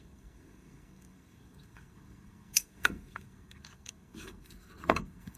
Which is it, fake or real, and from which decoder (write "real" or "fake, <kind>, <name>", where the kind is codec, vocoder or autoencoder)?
fake, codec, SNAC